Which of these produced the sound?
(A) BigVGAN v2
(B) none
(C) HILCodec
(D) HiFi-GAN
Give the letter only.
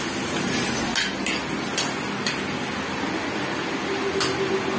B